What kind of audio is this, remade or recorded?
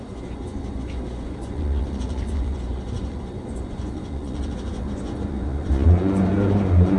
remade